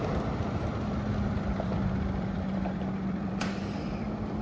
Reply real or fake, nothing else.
fake